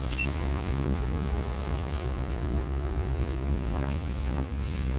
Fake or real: fake